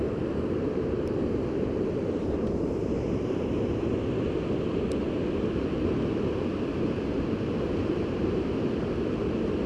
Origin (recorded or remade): recorded